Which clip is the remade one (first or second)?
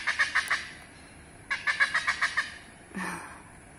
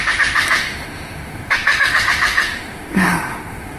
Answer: second